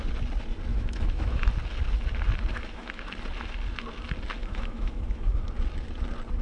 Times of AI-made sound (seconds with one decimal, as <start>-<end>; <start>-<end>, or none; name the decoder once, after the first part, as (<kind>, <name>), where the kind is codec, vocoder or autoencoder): 0.7-1.5 (autoencoder, DAC-VAE); 2.5-3.1; 4.4-5.4